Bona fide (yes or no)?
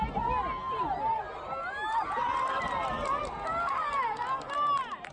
yes